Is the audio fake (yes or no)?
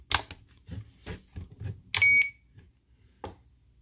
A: no